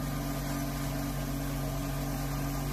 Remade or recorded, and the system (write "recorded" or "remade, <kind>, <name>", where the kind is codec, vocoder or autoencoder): recorded